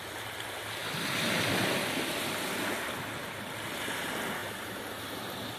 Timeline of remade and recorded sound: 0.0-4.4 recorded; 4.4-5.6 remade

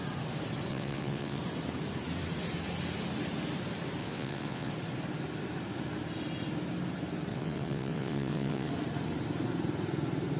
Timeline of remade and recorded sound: 0.0-0.7 recorded; 0.7-1.4 remade; 1.4-4.0 recorded; 4.0-4.7 remade; 4.7-7.3 recorded; 7.3-8.7 remade; 8.7-10.4 recorded

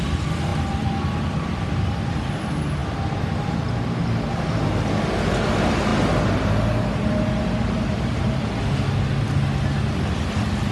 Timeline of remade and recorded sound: 0.0-10.7 recorded

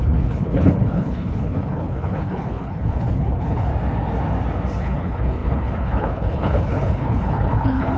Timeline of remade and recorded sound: 0.0-3.7 remade; 3.7-4.8 recorded; 4.8-8.0 remade

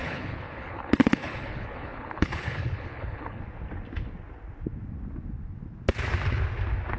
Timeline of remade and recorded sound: 0.0-3.4 remade; 3.4-7.0 recorded

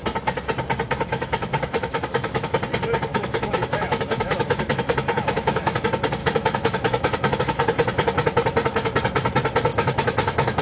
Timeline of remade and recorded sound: 0.0-1.1 recorded; 1.1-2.5 remade; 2.5-3.1 recorded; 3.1-5.8 remade; 5.8-6.2 recorded; 6.2-7.4 remade; 7.4-9.7 recorded; 9.7-10.6 remade

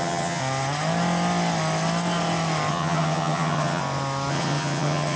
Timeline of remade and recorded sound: 0.0-0.4 remade; 0.4-2.7 recorded; 2.7-3.8 remade; 3.8-4.3 recorded; 4.3-5.2 remade